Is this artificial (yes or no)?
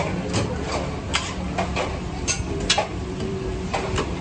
no